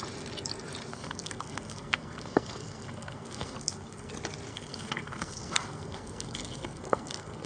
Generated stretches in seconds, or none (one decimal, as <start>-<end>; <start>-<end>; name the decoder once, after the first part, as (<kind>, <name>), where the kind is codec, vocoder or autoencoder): 0.9-4.1 (codec, SNAC); 4.5-7.5